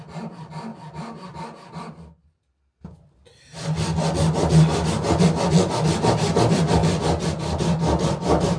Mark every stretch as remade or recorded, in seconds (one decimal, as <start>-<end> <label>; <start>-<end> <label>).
0.0-8.6 recorded